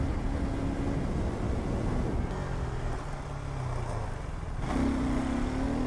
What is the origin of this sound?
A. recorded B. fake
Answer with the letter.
A